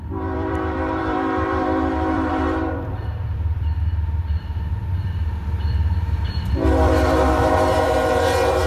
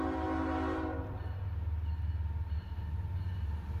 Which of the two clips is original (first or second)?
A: second